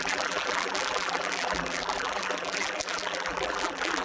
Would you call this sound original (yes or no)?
no